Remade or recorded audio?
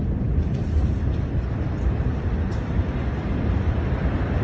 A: recorded